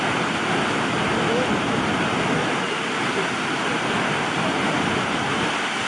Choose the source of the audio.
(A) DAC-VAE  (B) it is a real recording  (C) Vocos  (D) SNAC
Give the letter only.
B